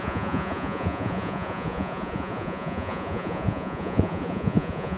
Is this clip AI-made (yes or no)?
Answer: yes